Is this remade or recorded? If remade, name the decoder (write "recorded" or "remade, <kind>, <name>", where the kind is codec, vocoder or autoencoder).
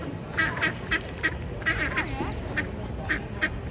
recorded